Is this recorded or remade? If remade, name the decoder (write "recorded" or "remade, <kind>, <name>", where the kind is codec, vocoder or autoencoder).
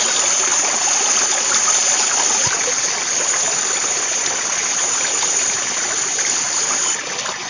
recorded